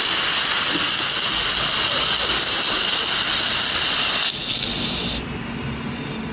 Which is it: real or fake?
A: real